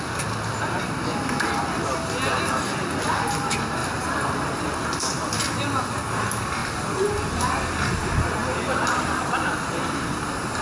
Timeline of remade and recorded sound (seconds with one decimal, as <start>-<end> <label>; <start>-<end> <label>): 0.0-3.8 recorded; 3.8-5.6 remade; 5.6-8.4 recorded; 8.4-9.5 remade; 9.5-10.6 recorded